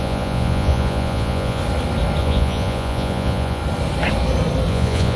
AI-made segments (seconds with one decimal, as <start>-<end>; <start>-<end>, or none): 0.0-1.6; 2.2-3.6; 4.7-5.2